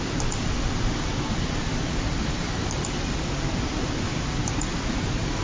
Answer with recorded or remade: recorded